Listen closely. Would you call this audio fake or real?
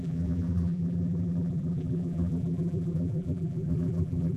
fake